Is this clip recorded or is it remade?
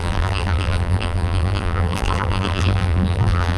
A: remade